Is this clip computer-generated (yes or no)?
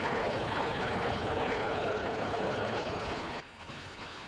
yes